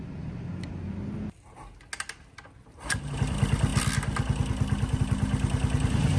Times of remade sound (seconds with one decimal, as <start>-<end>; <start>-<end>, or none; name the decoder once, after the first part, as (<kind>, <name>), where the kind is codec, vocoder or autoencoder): none